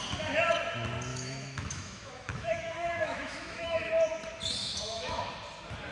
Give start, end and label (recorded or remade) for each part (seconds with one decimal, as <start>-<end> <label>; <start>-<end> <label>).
0.0-1.1 recorded; 1.1-3.9 remade; 3.9-4.6 recorded; 4.6-5.2 remade; 5.2-5.9 recorded